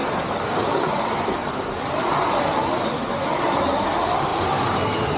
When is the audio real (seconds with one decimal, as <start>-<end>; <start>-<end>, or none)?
0.0-4.3; 4.8-5.2